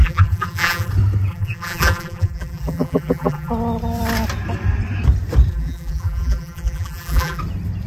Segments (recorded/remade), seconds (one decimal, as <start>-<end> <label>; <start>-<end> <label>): 0.0-0.9 remade; 0.9-1.3 recorded; 1.3-3.5 remade; 3.5-5.5 recorded; 5.5-7.4 remade; 7.4-7.9 recorded